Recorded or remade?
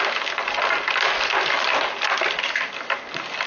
recorded